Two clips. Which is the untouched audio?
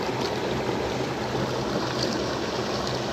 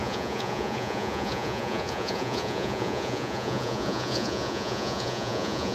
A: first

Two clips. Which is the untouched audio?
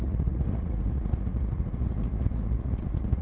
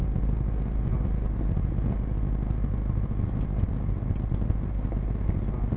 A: second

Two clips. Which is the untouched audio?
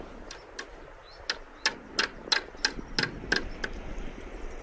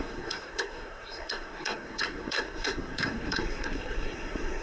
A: first